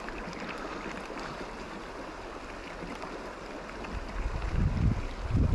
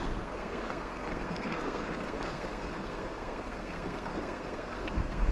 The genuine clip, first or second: first